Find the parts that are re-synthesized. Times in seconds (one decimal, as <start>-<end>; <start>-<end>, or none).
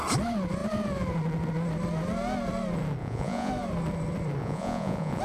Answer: 3.0-3.5; 4.4-5.2